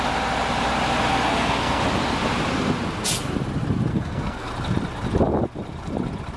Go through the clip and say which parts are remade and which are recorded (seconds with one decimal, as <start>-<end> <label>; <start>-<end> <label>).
0.0-1.1 recorded; 1.1-1.8 remade; 1.8-3.9 recorded; 3.9-4.5 remade; 4.5-6.4 recorded